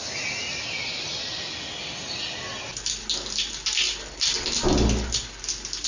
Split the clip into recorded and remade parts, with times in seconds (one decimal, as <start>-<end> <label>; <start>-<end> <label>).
0.0-5.9 recorded